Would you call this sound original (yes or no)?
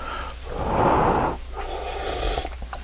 yes